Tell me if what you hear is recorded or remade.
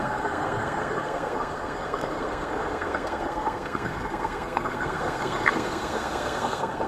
remade